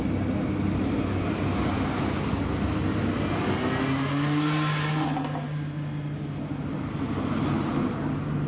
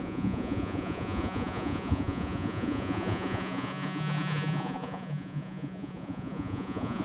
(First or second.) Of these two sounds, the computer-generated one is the second